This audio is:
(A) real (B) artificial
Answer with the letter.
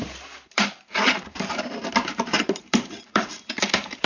B